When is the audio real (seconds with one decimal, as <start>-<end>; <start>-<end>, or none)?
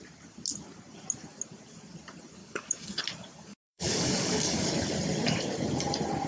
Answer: 0.0-2.4; 3.0-3.5; 4.7-6.3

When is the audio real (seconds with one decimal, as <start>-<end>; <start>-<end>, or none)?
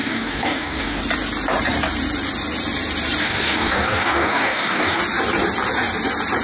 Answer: 1.0-3.2; 5.0-6.4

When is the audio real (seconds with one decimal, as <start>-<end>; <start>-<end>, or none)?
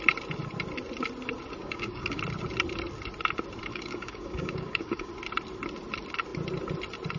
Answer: 0.0-1.6; 2.2-3.7; 5.1-7.2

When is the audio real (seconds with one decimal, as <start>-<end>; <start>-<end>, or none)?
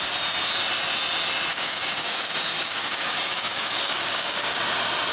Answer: 0.0-1.5; 4.6-5.1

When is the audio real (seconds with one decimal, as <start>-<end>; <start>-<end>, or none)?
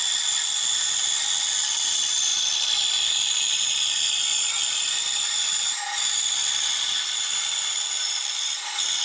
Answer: 0.0-9.0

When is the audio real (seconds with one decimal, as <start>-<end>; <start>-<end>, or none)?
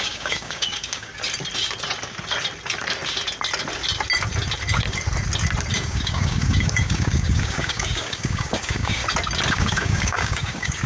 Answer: 1.1-5.7; 9.0-9.5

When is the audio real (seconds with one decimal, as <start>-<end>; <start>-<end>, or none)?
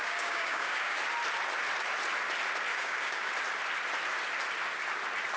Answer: 1.0-2.7; 3.3-5.4